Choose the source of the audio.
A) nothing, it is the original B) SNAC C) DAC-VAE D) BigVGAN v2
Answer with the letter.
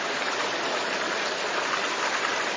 A